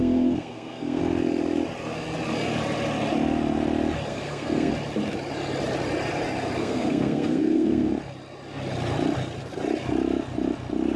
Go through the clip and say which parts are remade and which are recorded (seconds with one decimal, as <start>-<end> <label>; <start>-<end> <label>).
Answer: 0.0-1.0 remade; 1.0-4.1 recorded; 4.1-4.7 remade; 4.7-6.6 recorded; 6.6-7.9 remade; 7.9-11.0 recorded